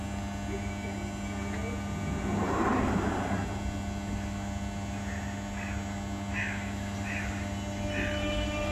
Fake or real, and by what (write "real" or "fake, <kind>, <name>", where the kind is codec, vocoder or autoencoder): real